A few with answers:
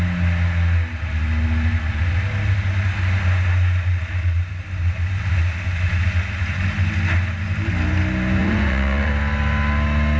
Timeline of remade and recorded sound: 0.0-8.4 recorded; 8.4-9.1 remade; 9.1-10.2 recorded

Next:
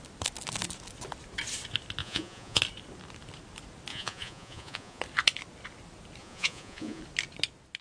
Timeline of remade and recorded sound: 0.0-2.0 recorded; 2.0-2.6 remade; 2.6-3.9 recorded; 3.9-5.0 remade; 5.0-6.2 recorded; 6.2-7.0 remade; 7.0-7.8 recorded

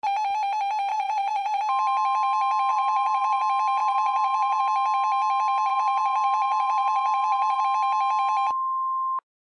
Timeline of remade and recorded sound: 0.0-0.9 recorded; 0.9-1.6 remade; 1.6-2.7 recorded; 2.7-3.4 remade; 3.4-3.8 recorded; 3.8-4.6 remade; 4.6-5.7 recorded; 5.7-7.6 remade; 7.6-9.6 recorded

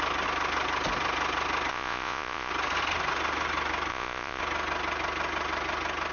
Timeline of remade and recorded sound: 0.0-1.7 recorded; 1.7-2.5 remade; 2.5-3.9 recorded; 3.9-4.4 remade; 4.4-6.1 recorded

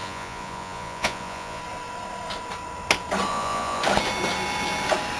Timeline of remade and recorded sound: 0.0-1.6 remade; 1.6-3.3 recorded; 3.3-3.8 remade; 3.8-5.2 recorded